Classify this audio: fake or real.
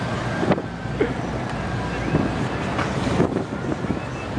real